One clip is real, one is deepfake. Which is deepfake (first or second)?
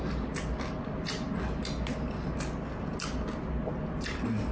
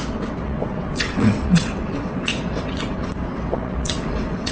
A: second